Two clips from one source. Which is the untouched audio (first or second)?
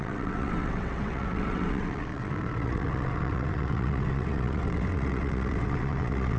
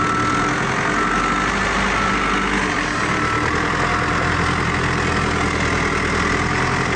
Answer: second